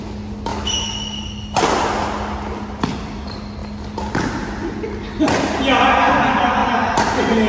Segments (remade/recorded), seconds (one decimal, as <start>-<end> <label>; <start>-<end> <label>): 0.0-0.5 recorded; 0.5-1.2 remade; 1.2-7.5 recorded